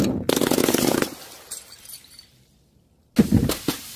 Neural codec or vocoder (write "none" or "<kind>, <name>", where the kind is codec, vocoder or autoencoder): none